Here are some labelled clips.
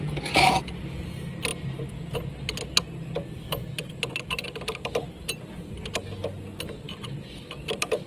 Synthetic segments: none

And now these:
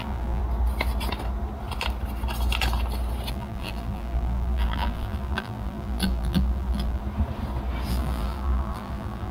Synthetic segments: 0.0-0.4; 3.3-7.0; 7.9-9.3